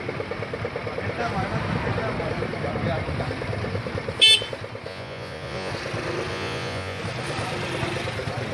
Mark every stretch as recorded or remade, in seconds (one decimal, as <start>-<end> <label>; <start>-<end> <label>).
0.0-4.9 recorded; 4.9-5.7 remade; 5.7-6.3 recorded; 6.3-7.0 remade; 7.0-8.5 recorded